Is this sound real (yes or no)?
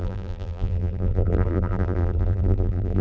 no